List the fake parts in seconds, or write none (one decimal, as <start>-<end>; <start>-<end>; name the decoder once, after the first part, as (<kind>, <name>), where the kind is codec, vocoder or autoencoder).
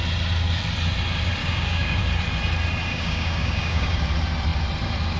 1.4-2.0 (codec, DAC); 2.9-4.0